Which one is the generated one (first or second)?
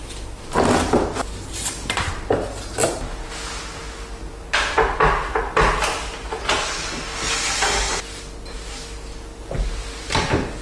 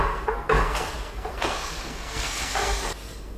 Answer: second